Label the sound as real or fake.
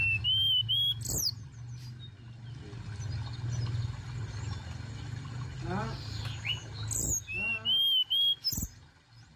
real